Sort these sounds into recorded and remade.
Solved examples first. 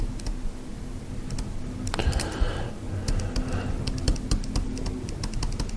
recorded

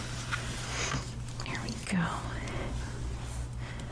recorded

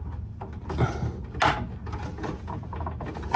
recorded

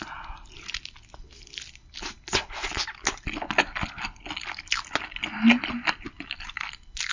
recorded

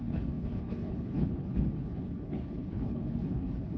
remade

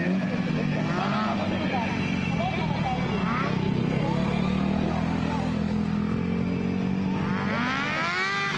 recorded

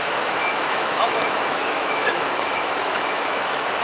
remade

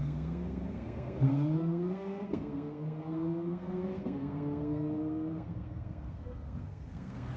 remade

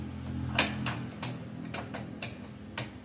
recorded